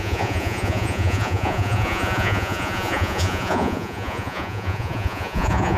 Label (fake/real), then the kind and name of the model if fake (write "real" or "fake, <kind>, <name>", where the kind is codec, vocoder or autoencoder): fake, vocoder, Vocos